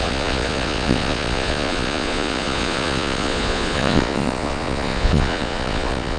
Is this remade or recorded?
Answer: remade